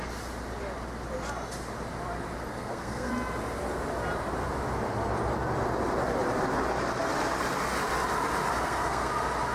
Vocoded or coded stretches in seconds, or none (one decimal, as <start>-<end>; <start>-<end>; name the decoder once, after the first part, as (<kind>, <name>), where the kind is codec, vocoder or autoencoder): 2.5-3.1 (codec, SNAC); 8.5-9.1